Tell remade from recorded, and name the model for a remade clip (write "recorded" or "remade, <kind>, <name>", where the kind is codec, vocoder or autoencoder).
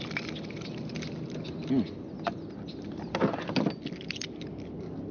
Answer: recorded